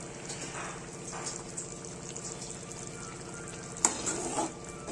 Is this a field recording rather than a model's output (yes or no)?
yes